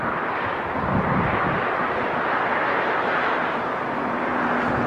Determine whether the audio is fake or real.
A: real